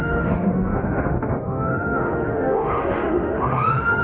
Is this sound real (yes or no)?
no